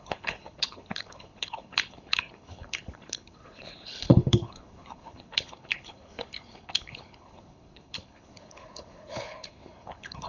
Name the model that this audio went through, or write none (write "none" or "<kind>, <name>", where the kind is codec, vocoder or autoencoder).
codec, HILCodec